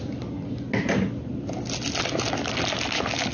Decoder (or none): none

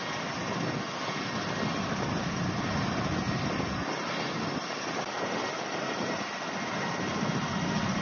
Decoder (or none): none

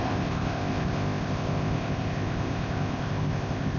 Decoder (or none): codec, ZipCodec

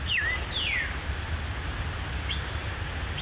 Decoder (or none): none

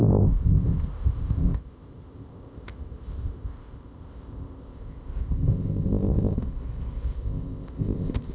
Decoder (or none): codec, ZipCodec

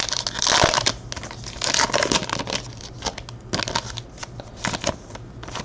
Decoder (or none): none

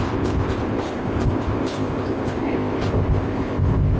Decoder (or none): codec, ZipCodec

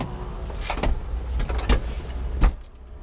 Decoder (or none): none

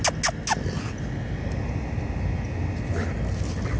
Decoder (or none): none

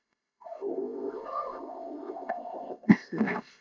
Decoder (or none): codec, ZipCodec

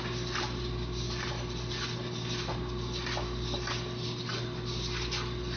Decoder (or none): none